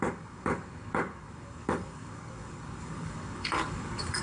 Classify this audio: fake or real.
fake